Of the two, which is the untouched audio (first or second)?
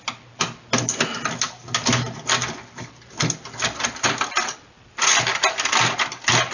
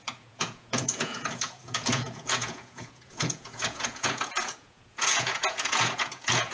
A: first